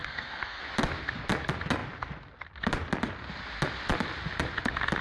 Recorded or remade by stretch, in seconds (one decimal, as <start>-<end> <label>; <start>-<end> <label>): 0.0-0.6 remade; 0.6-5.0 recorded